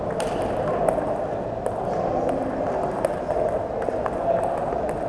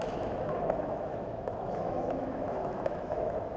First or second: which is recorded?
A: first